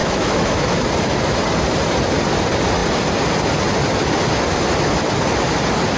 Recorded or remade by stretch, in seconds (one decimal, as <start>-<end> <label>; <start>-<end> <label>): 0.0-0.8 remade; 0.8-6.0 recorded